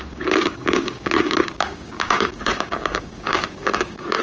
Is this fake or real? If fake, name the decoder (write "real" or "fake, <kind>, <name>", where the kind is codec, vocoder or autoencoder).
fake, codec, DAC